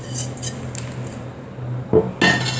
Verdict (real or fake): real